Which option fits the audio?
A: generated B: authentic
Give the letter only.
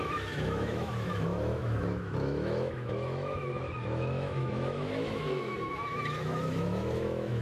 A